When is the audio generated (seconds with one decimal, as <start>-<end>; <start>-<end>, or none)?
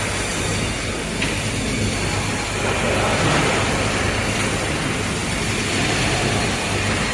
none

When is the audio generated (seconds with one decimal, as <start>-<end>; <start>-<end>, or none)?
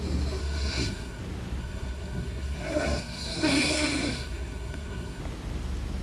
0.4-1.2; 1.6-5.2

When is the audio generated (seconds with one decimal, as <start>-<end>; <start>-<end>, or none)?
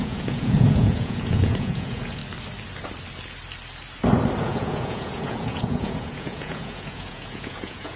0.0-2.2; 4.4-8.0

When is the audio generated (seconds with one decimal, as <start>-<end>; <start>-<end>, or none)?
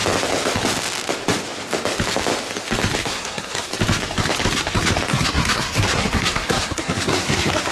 3.0-3.7; 5.1-7.7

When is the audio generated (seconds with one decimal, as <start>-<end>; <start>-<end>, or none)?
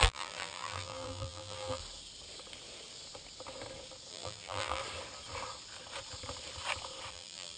0.0-1.8; 4.1-4.8; 7.1-7.6